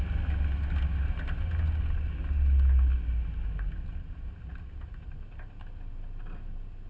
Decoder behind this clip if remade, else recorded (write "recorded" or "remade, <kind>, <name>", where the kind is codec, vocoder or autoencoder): recorded